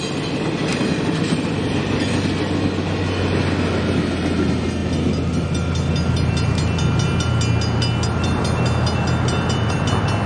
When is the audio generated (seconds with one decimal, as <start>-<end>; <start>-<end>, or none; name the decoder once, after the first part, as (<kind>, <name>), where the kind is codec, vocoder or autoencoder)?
0.7-1.7 (vocoder, BigVGAN v2)